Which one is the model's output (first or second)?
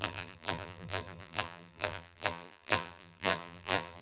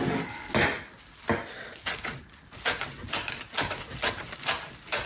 first